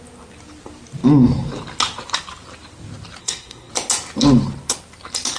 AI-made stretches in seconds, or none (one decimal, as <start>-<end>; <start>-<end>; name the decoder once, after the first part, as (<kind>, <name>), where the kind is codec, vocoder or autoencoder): 3.2-3.7 (codec, SNAC)